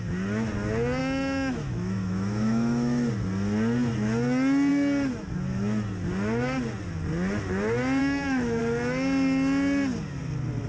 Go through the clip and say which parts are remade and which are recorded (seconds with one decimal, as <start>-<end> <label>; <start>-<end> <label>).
0.0-1.0 recorded; 1.0-3.1 remade; 3.1-8.0 recorded; 8.0-8.6 remade; 8.6-10.7 recorded